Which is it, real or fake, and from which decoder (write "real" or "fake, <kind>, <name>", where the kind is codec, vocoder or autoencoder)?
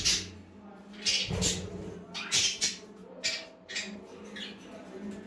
real